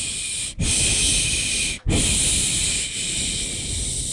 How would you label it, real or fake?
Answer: real